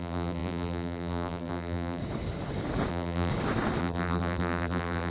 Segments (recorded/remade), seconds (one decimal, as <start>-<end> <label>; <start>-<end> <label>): 0.0-2.0 remade; 2.0-2.9 recorded; 2.9-3.3 remade; 3.3-3.8 recorded; 3.8-5.1 remade